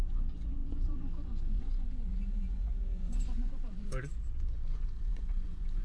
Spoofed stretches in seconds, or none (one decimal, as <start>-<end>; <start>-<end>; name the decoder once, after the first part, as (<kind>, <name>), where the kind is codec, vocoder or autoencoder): 0.0-5.8 (vocoder, Vocos)